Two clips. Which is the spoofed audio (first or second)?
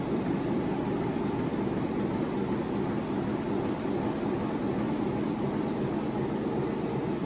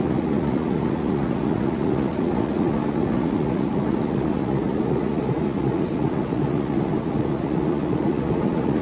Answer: second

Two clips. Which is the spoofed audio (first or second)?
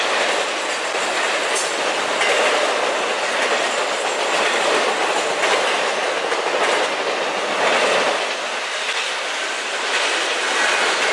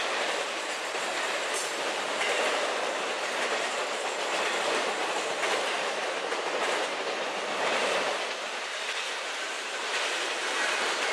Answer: second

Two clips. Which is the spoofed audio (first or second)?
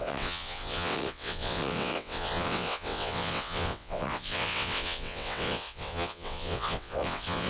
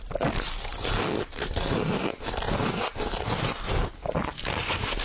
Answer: first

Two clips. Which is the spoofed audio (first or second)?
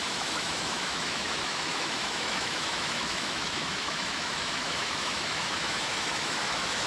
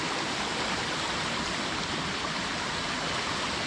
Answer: first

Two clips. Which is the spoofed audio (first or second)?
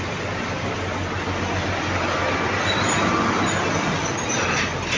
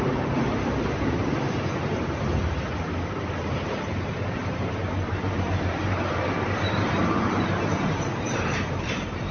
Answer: second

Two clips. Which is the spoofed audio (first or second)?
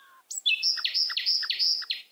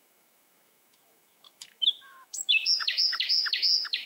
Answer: second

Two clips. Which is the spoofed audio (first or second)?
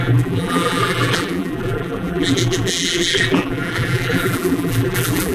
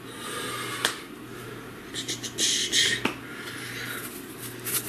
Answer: first